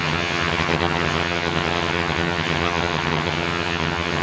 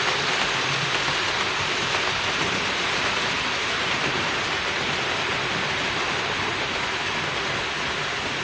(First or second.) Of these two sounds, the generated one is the first